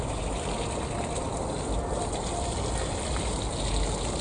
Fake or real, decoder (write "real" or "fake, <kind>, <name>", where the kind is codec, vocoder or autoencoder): real